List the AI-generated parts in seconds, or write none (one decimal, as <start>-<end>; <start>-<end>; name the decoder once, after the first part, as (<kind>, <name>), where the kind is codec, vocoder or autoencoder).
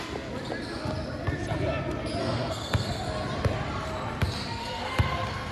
2.2-3.0 (codec, SNAC); 4.6-5.5